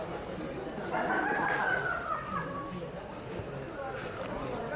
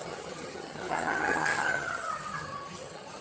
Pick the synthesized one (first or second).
second